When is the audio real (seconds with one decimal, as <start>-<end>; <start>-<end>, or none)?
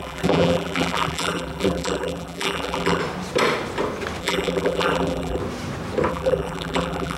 3.0-4.2; 5.4-6.1